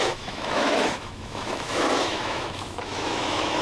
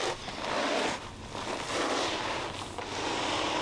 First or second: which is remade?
first